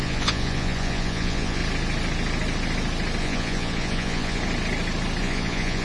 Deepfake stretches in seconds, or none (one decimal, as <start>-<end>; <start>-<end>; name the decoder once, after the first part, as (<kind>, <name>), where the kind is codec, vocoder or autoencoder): 0.0-1.6 (vocoder, Vocos); 3.2-4.4; 5.2-5.8